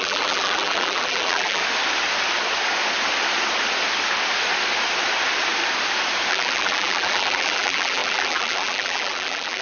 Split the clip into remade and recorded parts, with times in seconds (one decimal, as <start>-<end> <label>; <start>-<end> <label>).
0.0-1.6 remade; 1.6-6.3 recorded; 6.3-9.6 remade